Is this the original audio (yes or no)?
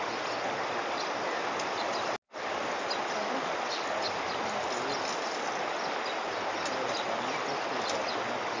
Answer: yes